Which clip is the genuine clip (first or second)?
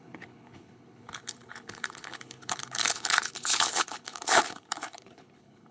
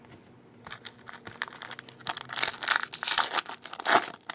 second